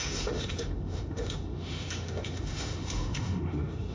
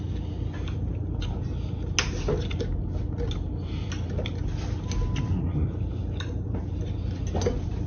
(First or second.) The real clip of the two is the second